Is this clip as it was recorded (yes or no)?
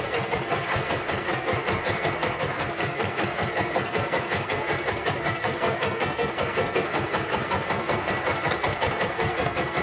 no